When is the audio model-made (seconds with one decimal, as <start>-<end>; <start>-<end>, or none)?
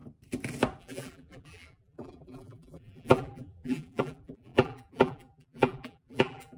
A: 0.8-6.6